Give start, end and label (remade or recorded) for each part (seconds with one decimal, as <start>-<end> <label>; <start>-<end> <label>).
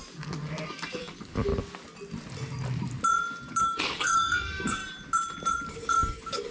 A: 0.0-0.7 recorded; 0.7-1.5 remade; 1.5-3.6 recorded; 3.6-4.8 remade; 4.8-5.7 recorded; 5.7-6.5 remade